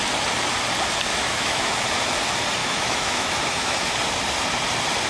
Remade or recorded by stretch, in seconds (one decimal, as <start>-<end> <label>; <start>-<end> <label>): 0.0-1.1 recorded; 1.1-1.7 remade; 1.7-2.6 recorded; 2.6-3.9 remade; 3.9-5.1 recorded